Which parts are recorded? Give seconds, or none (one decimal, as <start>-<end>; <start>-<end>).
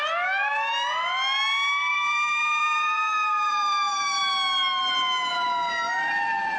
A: 0.5-1.9; 4.2-5.9